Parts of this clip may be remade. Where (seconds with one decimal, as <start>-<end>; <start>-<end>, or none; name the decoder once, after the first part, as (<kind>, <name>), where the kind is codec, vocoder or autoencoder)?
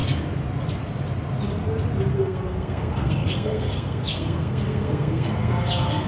2.1-6.1 (codec, SNAC)